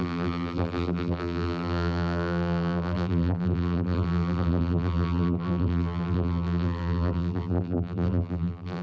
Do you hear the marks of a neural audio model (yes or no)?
yes